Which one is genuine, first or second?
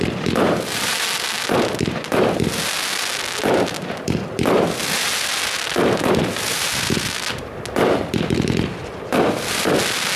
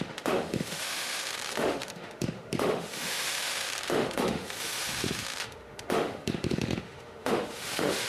first